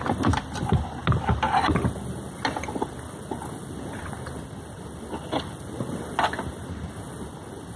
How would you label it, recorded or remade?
recorded